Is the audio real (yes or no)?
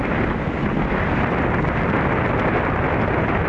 yes